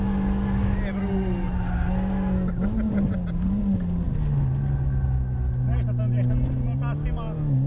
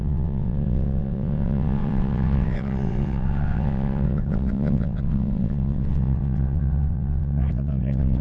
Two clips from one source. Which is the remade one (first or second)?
second